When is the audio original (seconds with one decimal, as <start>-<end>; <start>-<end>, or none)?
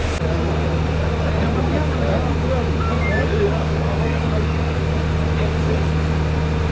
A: 0.0-3.3; 4.8-6.7